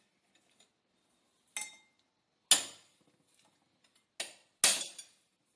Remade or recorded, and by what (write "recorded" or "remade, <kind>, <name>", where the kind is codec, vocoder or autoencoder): recorded